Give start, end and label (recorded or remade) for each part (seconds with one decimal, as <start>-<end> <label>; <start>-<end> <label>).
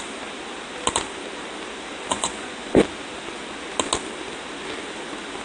0.0-2.1 recorded; 2.1-2.7 remade; 2.7-5.4 recorded